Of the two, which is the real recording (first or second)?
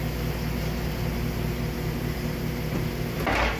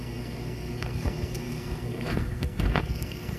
first